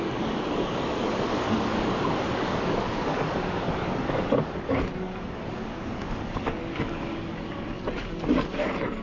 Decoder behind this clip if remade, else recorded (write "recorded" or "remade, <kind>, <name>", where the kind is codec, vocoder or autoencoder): remade, codec, DAC